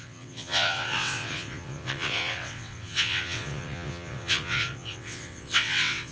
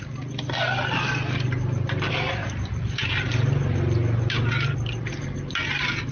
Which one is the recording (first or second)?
second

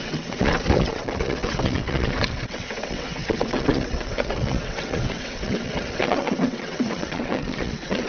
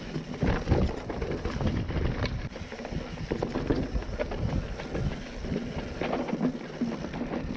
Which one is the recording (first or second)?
second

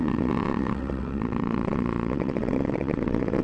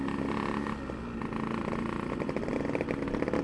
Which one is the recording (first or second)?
second